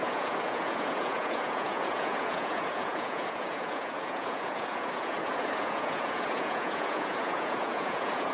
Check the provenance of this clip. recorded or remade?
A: remade